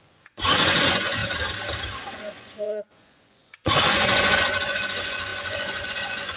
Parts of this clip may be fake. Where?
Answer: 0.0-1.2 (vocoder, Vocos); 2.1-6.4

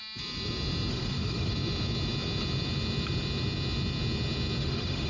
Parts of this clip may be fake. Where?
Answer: 0.9-1.5 (autoencoder, DAC-VAE); 4.6-5.1

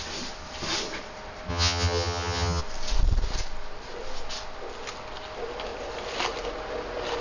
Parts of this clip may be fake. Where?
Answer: 1.5-2.6 (vocoder, HiFi-GAN)

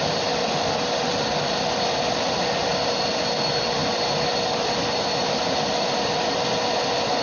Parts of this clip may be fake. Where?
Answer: none

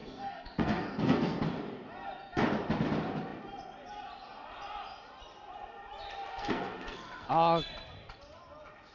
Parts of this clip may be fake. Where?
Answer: 0.0-1.4 (codec, SNAC); 6.3-7.3

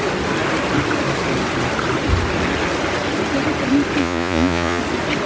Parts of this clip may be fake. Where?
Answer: 4.0-4.8 (vocoder, Vocos)